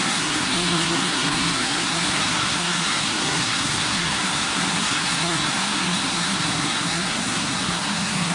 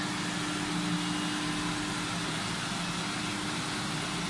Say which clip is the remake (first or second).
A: first